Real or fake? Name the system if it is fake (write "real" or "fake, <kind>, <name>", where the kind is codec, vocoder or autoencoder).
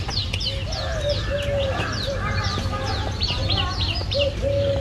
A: real